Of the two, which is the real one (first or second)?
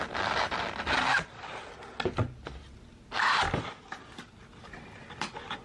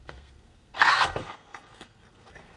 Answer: first